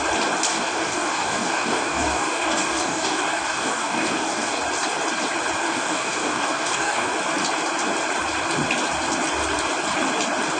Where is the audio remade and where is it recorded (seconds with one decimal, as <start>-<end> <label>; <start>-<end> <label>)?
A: 0.0-0.5 recorded; 0.5-4.6 remade; 4.6-5.6 recorded; 5.6-7.1 remade; 7.1-10.6 recorded

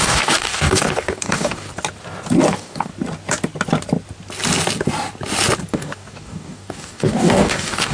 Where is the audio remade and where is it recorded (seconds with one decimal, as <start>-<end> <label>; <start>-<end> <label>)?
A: 0.0-1.7 remade; 1.7-2.5 recorded; 2.5-2.9 remade; 2.9-5.7 recorded; 5.7-7.9 remade

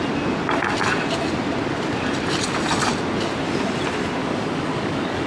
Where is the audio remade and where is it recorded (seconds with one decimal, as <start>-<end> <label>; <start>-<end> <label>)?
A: 0.0-4.2 recorded; 4.2-5.3 remade

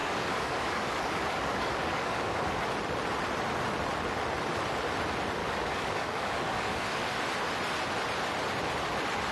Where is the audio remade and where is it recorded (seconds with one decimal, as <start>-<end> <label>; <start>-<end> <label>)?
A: 0.0-2.6 remade; 2.6-5.4 recorded; 5.4-7.1 remade; 7.1-9.3 recorded

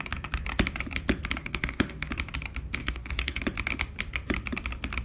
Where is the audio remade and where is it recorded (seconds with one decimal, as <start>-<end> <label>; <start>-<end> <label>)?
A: 0.0-1.4 recorded; 1.4-2.1 remade; 2.1-2.8 recorded; 2.8-3.4 remade; 3.4-5.0 recorded

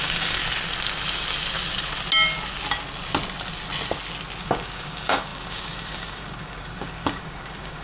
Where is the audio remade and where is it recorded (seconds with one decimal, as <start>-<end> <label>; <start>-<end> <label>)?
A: 0.0-0.4 remade; 0.4-4.4 recorded; 4.4-7.8 remade

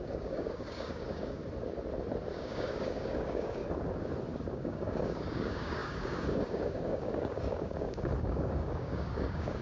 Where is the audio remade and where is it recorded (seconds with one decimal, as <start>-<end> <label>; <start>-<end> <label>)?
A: 0.0-1.4 remade; 1.4-2.3 recorded; 2.3-3.6 remade; 3.6-4.5 recorded; 4.5-9.6 remade